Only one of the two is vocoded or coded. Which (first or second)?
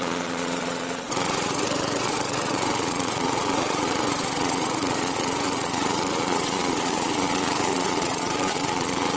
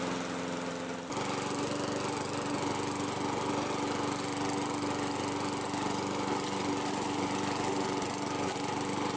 first